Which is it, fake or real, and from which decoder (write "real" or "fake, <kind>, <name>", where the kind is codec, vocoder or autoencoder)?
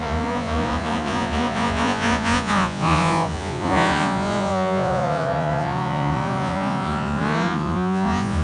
fake, vocoder, Vocos